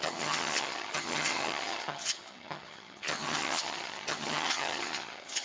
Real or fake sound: fake